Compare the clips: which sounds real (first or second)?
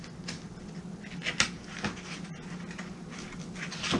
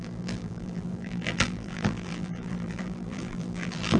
first